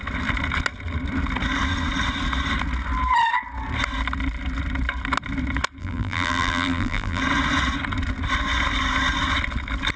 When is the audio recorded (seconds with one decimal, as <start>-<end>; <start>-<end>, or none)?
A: 0.0-5.8; 7.2-10.0